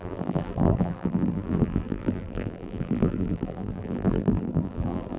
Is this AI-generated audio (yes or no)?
yes